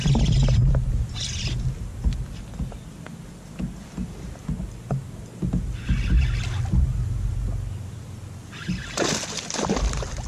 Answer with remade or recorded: recorded